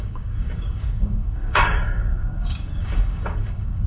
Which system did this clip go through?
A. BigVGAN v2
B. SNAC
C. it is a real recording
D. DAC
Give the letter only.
D